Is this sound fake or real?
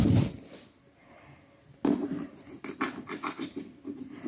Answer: real